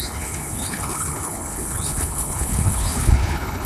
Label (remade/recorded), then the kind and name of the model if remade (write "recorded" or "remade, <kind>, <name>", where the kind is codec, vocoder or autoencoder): remade, codec, HILCodec